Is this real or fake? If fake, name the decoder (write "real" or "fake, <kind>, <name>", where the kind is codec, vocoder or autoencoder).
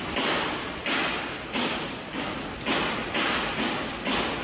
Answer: real